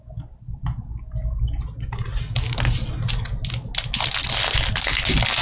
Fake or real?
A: real